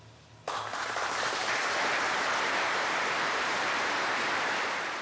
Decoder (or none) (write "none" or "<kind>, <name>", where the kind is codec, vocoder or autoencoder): vocoder, BigVGAN v2